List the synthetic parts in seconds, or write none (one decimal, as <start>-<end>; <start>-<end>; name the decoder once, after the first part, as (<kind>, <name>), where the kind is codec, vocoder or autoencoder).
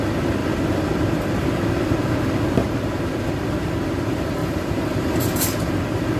4.4-5.2 (vocoder, BigVGAN v2)